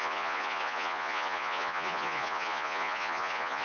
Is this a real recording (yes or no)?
no